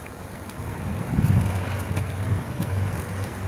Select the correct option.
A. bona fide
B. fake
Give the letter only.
B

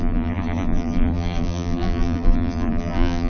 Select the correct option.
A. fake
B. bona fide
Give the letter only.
A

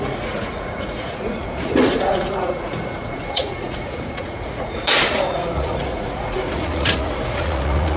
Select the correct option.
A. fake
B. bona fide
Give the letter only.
A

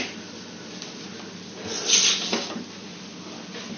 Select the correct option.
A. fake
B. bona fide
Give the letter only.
B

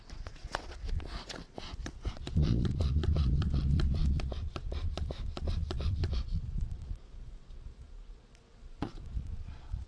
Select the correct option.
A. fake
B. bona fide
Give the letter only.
A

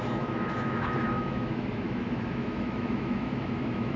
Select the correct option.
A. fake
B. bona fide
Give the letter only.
A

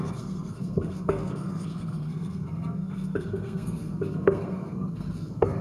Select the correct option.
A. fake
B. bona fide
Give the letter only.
A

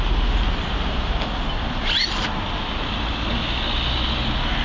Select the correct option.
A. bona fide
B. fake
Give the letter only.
A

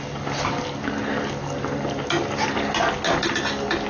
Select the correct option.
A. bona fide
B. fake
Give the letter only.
A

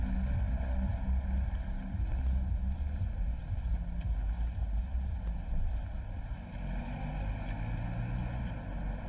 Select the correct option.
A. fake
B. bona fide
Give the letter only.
B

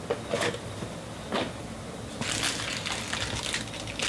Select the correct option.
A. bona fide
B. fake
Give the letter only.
A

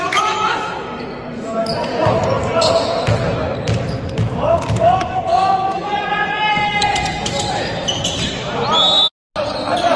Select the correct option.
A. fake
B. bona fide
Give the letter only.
B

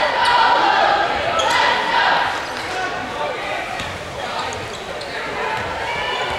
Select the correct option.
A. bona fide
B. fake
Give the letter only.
A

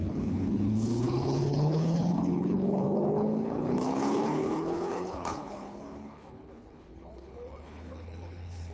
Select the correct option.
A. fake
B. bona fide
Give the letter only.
A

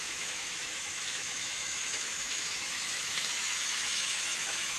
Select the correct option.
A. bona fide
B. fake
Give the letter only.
B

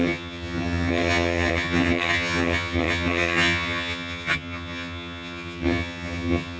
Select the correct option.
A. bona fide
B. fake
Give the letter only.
B